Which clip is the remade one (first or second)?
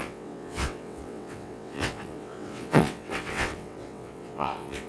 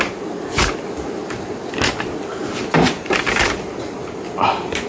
first